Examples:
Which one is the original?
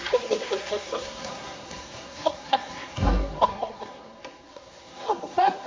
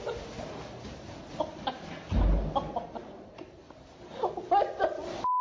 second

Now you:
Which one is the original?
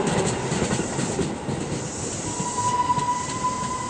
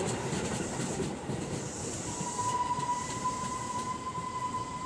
first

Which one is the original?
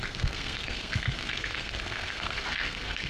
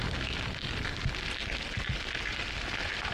second